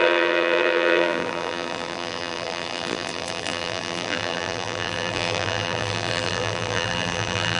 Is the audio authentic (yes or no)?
no